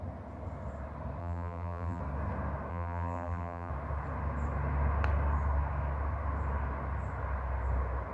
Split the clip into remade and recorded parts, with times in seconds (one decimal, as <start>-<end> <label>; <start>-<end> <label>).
0.0-1.2 recorded; 1.2-2.0 remade; 2.0-2.7 recorded; 2.7-3.7 remade; 3.7-8.1 recorded